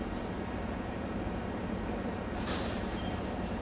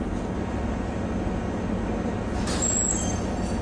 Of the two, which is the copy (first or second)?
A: first